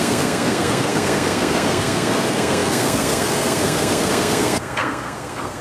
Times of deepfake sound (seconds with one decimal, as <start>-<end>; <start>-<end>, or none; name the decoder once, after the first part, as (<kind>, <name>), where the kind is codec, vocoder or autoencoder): 0.0-5.6 (codec, SNAC)